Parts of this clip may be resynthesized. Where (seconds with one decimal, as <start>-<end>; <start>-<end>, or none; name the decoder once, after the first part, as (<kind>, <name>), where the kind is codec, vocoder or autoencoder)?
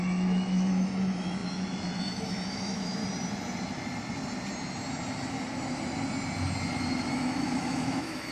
0.0-3.0 (autoencoder, DAC-VAE); 7.1-8.3